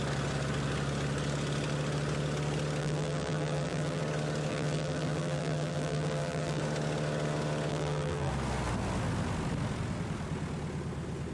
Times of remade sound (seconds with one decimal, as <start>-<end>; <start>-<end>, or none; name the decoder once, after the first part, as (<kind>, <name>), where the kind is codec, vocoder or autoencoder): 2.8-4.0 (vocoder, BigVGAN v2); 4.5-6.6; 7.7-8.3